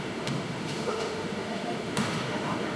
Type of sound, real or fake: fake